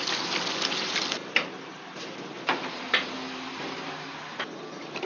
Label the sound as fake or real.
real